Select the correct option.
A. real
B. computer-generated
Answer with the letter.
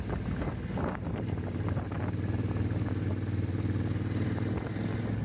A